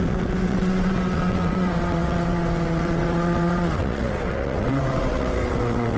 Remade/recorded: remade